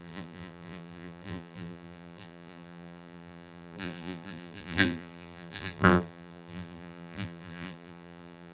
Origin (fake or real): fake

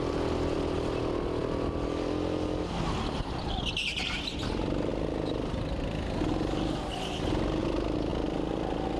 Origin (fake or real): real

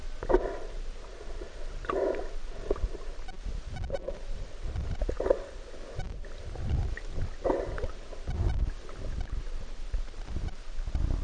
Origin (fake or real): real